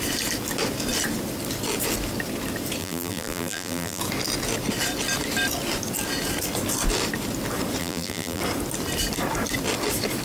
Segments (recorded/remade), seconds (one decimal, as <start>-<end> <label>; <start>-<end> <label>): 0.0-2.8 recorded; 2.8-4.0 remade; 4.0-7.8 recorded; 7.8-8.4 remade; 8.4-10.2 recorded

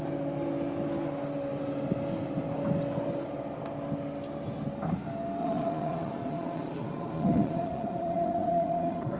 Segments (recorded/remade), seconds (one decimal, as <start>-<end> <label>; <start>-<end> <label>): 0.0-5.4 recorded; 5.4-9.2 remade

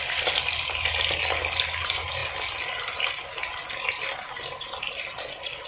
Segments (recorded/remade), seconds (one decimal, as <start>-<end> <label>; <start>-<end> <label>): 0.0-5.7 recorded

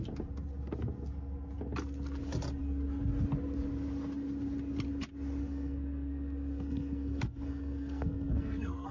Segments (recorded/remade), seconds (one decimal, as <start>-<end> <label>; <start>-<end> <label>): 0.0-5.4 recorded; 5.4-8.9 remade

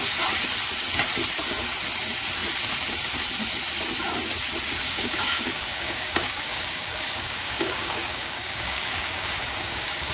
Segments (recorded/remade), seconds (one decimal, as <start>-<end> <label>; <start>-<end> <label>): 0.0-4.8 recorded; 4.8-10.1 remade

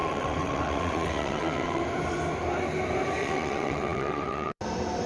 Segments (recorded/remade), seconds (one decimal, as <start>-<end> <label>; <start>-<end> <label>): 0.0-1.8 remade; 1.8-3.2 recorded; 3.2-4.6 remade; 4.6-5.1 recorded

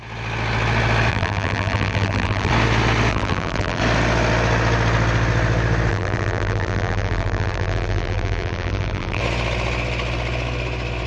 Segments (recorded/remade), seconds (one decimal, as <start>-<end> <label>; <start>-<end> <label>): 0.0-1.1 recorded; 1.1-2.5 remade; 2.5-3.1 recorded; 3.1-3.8 remade; 3.8-5.9 recorded; 5.9-9.2 remade; 9.2-11.1 recorded

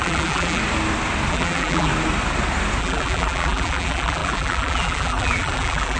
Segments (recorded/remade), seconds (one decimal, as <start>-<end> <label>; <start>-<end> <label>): 0.0-0.6 remade; 0.6-1.3 recorded; 1.3-1.9 remade; 1.9-2.8 recorded; 2.8-6.0 remade